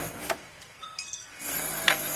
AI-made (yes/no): yes